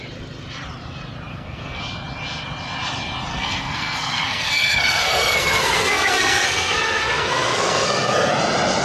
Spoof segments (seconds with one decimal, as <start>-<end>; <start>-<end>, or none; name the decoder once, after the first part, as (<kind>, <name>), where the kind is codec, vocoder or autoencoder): 1.3-1.8 (codec, SNAC); 3.3-8.3